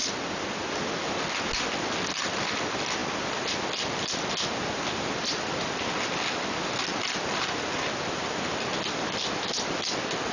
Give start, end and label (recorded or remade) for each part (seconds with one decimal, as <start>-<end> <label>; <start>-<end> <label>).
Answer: 0.0-10.3 recorded